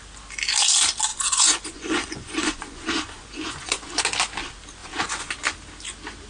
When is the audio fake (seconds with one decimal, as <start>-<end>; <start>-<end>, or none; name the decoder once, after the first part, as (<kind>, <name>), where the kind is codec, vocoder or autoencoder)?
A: 1.1-4.0 (vocoder, Vocos); 4.8-5.3